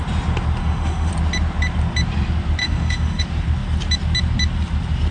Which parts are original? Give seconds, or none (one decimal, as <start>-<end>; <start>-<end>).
0.0-0.6; 1.1-2.6; 3.2-5.1